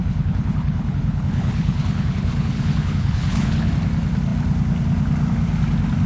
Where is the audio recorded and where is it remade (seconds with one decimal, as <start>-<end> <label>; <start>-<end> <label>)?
0.0-3.7 remade; 3.7-6.1 recorded